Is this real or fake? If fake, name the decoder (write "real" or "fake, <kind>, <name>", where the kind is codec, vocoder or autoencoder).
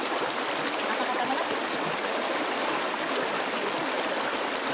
real